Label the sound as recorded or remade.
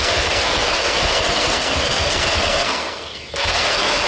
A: remade